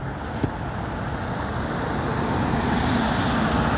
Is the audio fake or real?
real